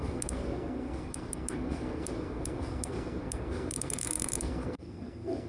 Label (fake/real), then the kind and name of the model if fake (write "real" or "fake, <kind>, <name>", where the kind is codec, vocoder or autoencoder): fake, codec, SNAC